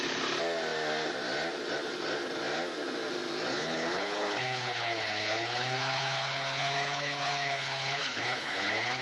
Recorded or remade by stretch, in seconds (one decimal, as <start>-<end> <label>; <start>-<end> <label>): 0.0-3.5 recorded; 3.5-9.0 remade

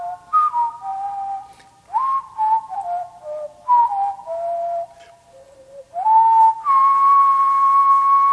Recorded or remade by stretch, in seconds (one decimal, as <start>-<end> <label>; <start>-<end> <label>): 0.0-8.3 recorded

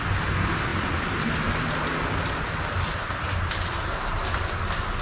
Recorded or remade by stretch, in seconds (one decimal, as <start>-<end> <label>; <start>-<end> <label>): 0.0-0.7 recorded; 0.7-1.6 remade; 1.6-5.0 recorded

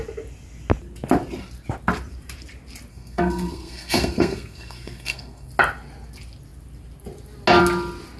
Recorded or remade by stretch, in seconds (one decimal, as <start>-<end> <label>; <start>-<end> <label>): 0.0-2.9 recorded; 2.9-5.5 remade; 5.5-8.2 recorded

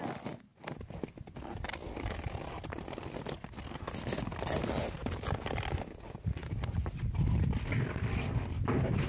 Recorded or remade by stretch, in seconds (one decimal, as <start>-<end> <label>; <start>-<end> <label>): 0.0-9.1 recorded

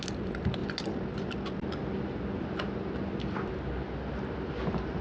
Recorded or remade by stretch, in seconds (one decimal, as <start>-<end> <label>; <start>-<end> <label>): 0.0-5.0 recorded

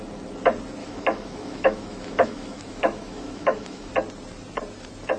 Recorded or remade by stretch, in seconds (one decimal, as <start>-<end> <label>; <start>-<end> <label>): 0.0-0.8 recorded; 0.8-3.9 remade; 3.9-5.2 recorded